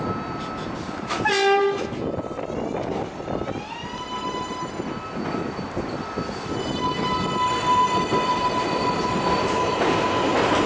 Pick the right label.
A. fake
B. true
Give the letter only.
B